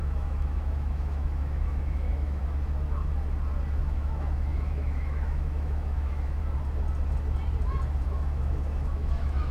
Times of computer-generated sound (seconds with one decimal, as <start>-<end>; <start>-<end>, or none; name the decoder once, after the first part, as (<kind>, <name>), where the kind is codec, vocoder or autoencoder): 0.0-2.4 (autoencoder, DAC-VAE); 3.8-6.4; 8.0-9.5